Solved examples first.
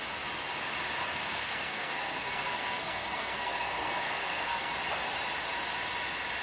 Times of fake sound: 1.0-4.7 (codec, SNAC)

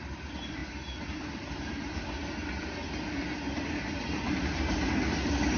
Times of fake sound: 0.0-0.6 (vocoder, BigVGAN v2); 4.0-5.6

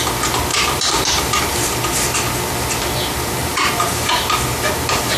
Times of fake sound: 0.5-1.7 (vocoder, BigVGAN v2); 3.4-5.2

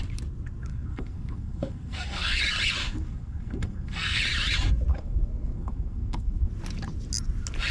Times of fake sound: 0.7-2.4 (codec, SNAC); 2.8-4.2; 4.9-6.5